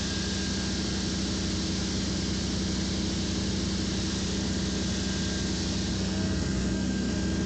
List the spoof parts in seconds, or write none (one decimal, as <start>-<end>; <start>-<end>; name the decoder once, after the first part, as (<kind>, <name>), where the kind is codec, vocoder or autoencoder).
5.9-7.1 (codec, SNAC)